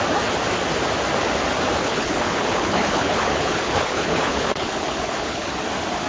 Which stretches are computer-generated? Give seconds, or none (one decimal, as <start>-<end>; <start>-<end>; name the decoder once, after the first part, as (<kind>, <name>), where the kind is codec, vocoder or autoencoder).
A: 1.8-5.5 (codec, HILCodec)